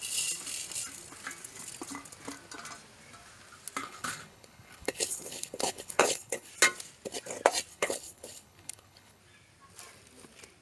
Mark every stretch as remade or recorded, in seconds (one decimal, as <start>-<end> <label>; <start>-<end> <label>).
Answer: 0.0-3.8 recorded; 3.8-6.5 remade; 6.5-7.7 recorded; 7.7-9.2 remade; 9.2-10.6 recorded